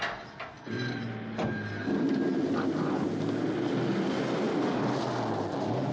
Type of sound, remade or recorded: recorded